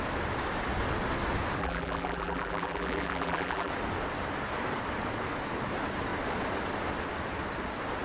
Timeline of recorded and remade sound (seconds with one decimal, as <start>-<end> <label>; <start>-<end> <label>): 0.0-1.6 recorded; 1.6-3.7 remade; 3.7-8.0 recorded